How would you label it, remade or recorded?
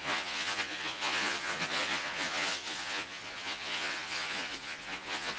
remade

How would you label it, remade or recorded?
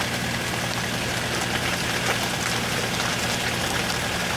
recorded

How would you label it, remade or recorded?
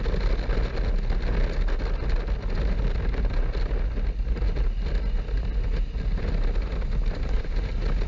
recorded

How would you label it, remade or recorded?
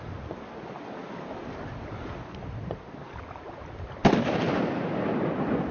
recorded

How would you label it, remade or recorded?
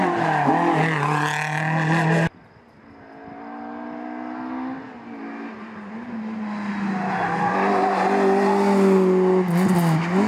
recorded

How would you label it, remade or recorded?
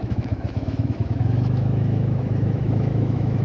remade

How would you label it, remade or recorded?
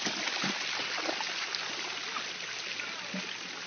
recorded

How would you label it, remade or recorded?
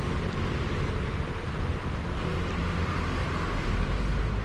recorded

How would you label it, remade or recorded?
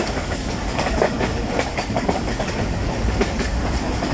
remade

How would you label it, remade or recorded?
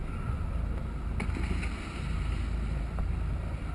recorded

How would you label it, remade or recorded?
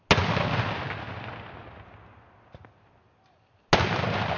recorded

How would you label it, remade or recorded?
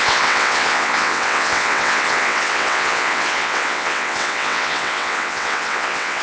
remade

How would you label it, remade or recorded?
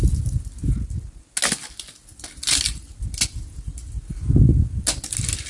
recorded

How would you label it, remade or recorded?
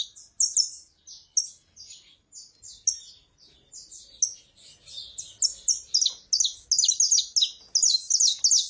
recorded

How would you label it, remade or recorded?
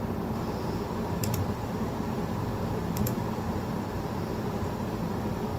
remade